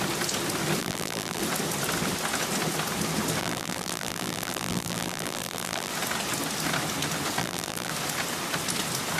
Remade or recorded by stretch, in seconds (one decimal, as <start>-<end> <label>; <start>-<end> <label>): 0.0-0.8 recorded; 0.8-1.4 remade; 1.4-3.4 recorded; 3.4-5.9 remade; 5.9-7.4 recorded; 7.4-7.9 remade; 7.9-9.2 recorded